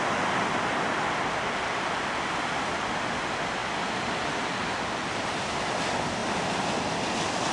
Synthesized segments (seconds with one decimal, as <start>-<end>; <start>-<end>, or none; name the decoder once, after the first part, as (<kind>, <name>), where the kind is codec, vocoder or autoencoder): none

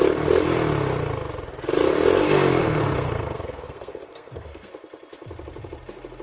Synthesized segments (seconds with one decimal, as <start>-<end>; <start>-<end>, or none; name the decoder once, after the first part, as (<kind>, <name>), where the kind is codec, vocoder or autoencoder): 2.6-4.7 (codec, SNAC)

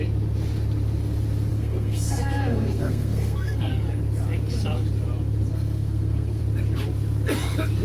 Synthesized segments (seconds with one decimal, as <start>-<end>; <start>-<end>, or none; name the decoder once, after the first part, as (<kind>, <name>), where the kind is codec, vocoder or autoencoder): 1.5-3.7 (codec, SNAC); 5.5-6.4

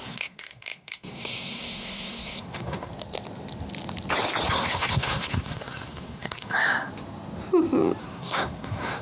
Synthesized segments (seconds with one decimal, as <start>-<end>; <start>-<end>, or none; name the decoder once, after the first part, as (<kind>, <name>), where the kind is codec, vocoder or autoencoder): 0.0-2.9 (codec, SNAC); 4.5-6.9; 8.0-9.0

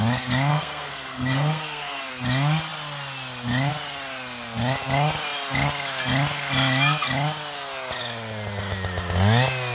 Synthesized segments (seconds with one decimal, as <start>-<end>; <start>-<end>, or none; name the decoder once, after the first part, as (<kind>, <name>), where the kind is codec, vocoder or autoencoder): 0.5-2.1 (codec, SNAC)

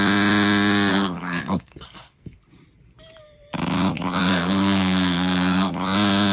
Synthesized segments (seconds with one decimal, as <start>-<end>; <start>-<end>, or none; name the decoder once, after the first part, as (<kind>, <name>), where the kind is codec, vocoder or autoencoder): 0.9-2.4 (codec, SNAC); 4.2-5.7

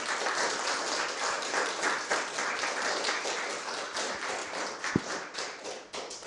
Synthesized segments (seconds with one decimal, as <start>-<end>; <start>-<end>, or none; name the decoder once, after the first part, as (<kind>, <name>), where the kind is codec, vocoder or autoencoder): none

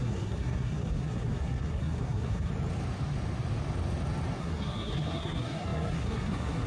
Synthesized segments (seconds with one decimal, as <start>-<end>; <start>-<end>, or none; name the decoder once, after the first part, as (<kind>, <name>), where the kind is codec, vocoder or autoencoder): 0.0-2.5 (codec, SNAC); 4.4-6.7